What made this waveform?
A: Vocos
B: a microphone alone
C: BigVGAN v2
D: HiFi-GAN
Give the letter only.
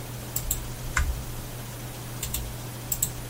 B